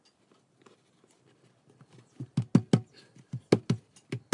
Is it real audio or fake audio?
real